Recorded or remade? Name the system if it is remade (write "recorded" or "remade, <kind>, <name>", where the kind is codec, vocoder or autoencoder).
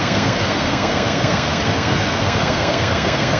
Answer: remade, codec, SNAC